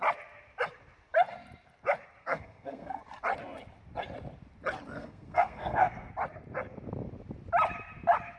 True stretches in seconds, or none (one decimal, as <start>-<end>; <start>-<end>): 0.0-2.2; 3.0-5.0; 6.1-8.4